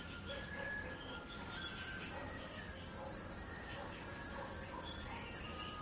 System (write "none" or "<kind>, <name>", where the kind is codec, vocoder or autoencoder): none